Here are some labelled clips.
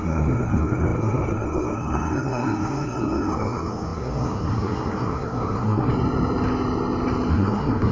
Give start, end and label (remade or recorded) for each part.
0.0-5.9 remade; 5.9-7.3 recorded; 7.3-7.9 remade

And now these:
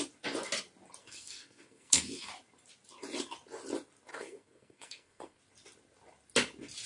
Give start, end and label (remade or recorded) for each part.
0.0-1.0 recorded; 1.0-2.3 remade; 2.3-4.1 recorded; 4.1-5.4 remade; 5.4-6.9 recorded

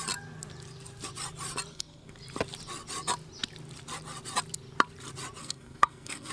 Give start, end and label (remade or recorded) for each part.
0.0-1.7 recorded; 1.7-2.2 remade; 2.2-5.4 recorded; 5.4-6.3 remade